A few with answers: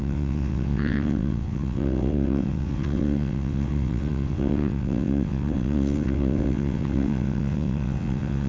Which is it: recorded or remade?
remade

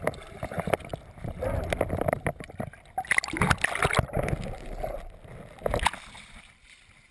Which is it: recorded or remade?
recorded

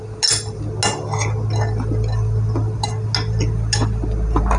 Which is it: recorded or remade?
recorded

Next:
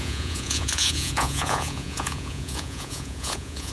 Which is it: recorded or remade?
remade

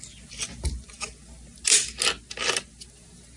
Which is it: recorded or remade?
recorded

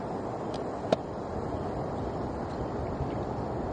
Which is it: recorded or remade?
recorded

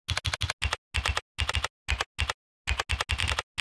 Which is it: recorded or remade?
recorded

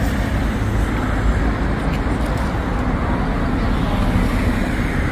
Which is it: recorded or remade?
recorded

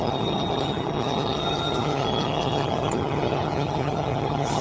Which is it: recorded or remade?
remade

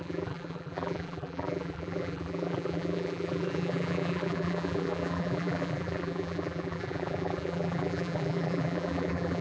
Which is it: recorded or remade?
remade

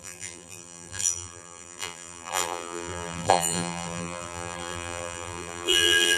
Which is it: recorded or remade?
remade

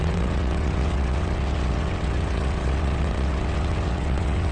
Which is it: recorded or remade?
remade